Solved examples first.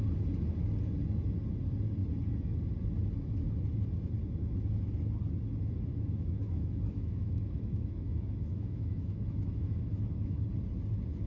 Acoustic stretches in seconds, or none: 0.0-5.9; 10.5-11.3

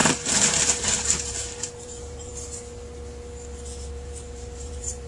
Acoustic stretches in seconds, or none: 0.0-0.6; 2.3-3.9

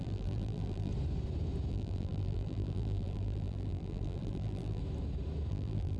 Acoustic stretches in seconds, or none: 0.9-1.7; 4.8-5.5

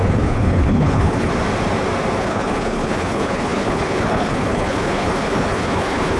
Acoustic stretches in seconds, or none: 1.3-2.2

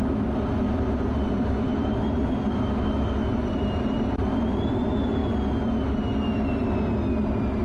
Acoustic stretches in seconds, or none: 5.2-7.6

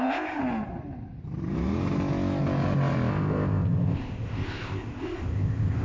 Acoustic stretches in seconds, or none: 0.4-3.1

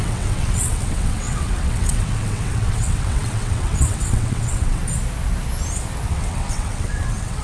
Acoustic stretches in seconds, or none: 4.8-6.1